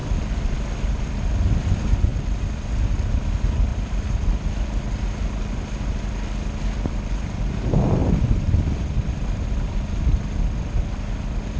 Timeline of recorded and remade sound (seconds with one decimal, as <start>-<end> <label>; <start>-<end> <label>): 0.0-2.1 recorded; 2.1-2.7 remade; 2.7-3.7 recorded; 3.7-4.5 remade; 4.5-8.0 recorded; 8.0-9.5 remade; 9.5-11.6 recorded